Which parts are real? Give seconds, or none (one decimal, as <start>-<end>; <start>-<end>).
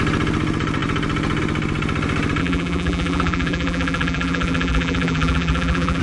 0.0-2.4